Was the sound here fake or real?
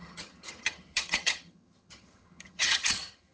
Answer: fake